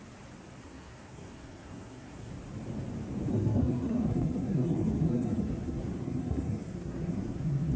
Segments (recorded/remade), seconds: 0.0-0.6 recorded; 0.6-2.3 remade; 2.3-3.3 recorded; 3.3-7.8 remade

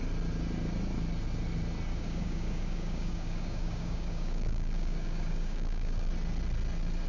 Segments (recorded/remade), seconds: 0.0-1.9 recorded; 1.9-6.1 remade; 6.1-7.1 recorded

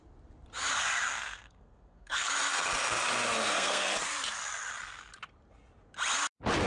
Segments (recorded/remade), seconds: 0.0-1.1 recorded; 1.1-2.3 remade; 2.3-3.4 recorded; 3.4-3.9 remade; 3.9-6.7 recorded

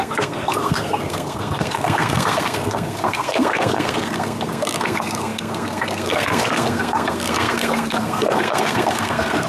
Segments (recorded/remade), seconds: 0.0-9.5 remade

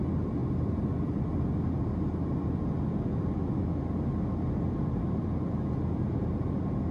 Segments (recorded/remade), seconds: 0.0-6.9 recorded